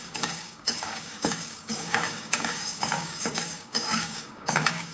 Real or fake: fake